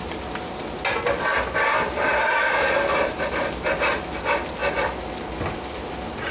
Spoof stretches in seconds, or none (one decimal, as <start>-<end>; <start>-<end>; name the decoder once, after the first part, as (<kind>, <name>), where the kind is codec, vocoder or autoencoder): none